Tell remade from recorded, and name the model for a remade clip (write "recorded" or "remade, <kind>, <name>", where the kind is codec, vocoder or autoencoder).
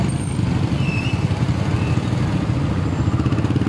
recorded